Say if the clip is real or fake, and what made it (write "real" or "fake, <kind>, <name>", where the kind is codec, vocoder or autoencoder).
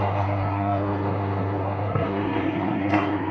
fake, codec, SNAC